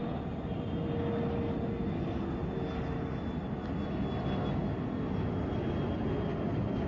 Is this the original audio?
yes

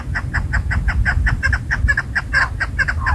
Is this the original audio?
yes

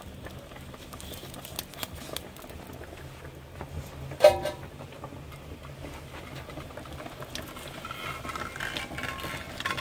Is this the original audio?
yes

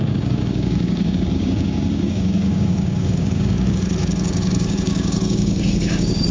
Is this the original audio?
no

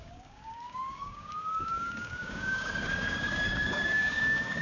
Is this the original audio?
no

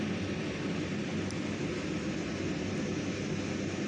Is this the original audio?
yes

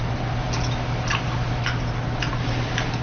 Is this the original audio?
yes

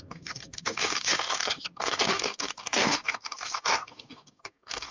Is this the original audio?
no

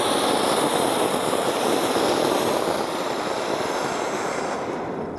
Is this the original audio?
yes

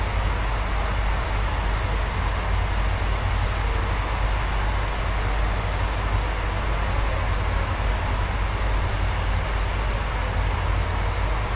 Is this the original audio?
yes